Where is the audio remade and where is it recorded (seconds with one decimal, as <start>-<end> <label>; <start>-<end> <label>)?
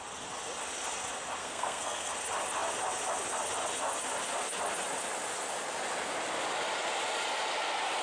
0.0-1.4 recorded; 1.4-2.1 remade; 2.1-8.0 recorded